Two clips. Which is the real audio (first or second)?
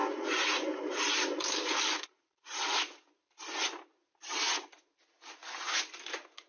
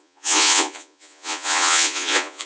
first